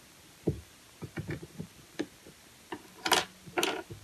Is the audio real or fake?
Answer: real